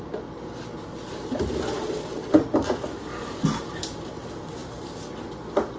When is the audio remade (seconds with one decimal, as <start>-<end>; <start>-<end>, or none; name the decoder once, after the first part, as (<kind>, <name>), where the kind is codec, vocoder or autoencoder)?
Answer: none